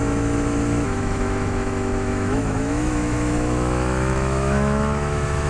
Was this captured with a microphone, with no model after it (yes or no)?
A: no